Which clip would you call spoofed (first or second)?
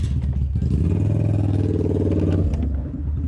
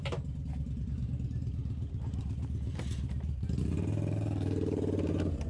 second